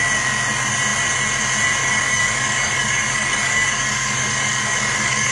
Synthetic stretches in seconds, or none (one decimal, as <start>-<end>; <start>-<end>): 1.8-5.3